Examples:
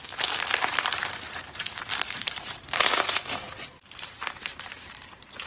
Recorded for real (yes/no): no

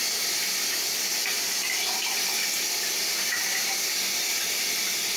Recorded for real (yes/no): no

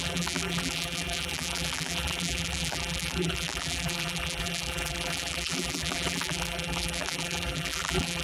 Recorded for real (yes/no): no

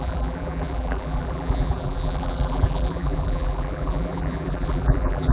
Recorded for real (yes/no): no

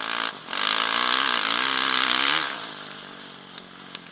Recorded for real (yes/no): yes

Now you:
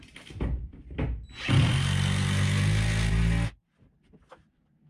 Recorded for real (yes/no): yes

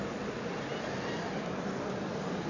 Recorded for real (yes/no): yes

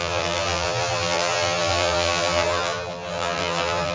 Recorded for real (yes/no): no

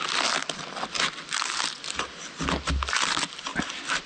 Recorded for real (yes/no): yes